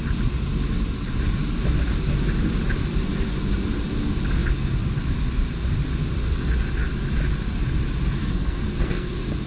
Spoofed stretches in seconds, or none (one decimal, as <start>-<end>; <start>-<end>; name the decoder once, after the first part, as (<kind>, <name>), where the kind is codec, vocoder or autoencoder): 8.2-9.1 (codec, SNAC)

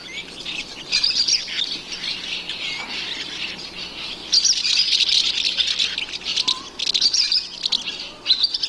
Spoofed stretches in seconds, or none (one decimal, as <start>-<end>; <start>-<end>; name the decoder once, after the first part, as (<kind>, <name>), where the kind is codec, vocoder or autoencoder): none

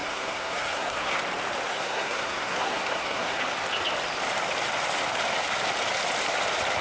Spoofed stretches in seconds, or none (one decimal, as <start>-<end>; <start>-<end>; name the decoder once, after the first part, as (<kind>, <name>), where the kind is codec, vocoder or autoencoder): 0.0-1.2 (codec, SNAC); 1.7-3.4

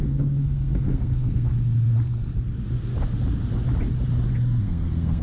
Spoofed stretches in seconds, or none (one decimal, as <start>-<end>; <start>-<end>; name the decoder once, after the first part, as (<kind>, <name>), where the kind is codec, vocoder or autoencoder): 0.0-1.5 (codec, SNAC); 4.6-5.2

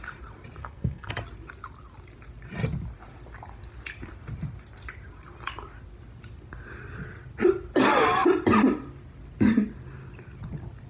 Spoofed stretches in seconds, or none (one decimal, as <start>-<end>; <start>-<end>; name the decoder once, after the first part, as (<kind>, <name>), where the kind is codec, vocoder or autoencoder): 0.6-1.1 (codec, SNAC)

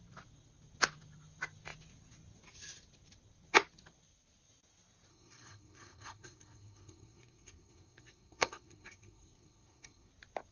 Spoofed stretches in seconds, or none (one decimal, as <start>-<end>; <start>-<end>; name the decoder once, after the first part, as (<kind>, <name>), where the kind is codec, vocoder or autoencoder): 5.1-10.1 (codec, SNAC)

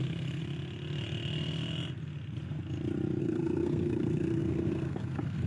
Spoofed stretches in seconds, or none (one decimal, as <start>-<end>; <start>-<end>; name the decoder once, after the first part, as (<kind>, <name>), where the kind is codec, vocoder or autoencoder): 0.0-0.4 (codec, SNAC); 3.2-5.5